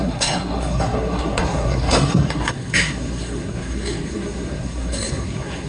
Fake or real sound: fake